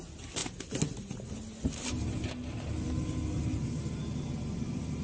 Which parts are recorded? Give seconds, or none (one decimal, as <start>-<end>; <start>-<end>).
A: 0.4-3.4